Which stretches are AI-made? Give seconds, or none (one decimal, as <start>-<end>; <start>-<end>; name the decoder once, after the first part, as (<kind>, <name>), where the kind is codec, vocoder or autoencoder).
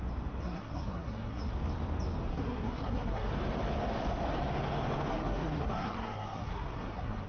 0.4-1.4 (codec, SNAC); 2.3-3.3; 5.1-7.3